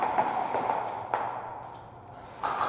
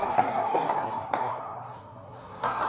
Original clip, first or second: first